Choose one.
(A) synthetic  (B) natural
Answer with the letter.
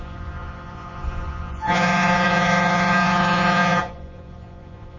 A